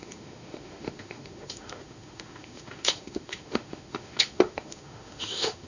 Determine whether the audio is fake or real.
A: fake